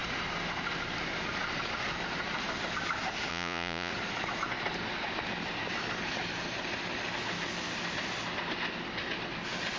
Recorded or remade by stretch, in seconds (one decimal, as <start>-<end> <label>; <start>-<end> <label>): 0.0-3.3 recorded; 3.3-3.9 remade; 3.9-9.8 recorded